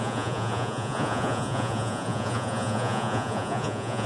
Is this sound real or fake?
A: fake